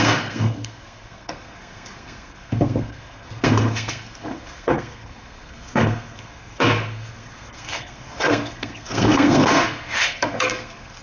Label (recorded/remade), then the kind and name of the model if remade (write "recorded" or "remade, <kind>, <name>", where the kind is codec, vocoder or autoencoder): remade, codec, SNAC